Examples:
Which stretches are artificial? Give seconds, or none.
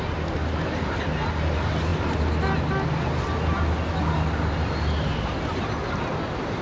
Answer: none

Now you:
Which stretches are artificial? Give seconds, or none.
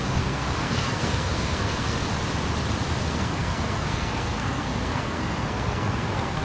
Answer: 0.0-2.0 (codec, SNAC); 3.0-6.4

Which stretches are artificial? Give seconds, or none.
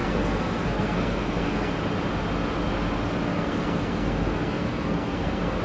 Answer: 0.0-1.7 (codec, SNAC); 3.3-5.6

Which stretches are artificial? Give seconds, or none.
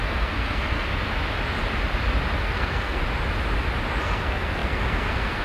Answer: 0.0-0.9 (codec, SNAC); 2.4-3.0; 4.0-5.4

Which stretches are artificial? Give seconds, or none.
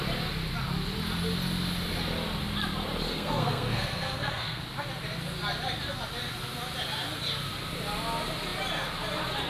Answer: 3.1-4.6 (codec, SNAC)